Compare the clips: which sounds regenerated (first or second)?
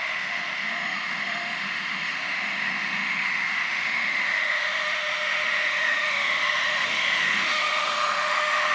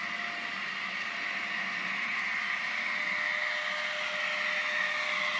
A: first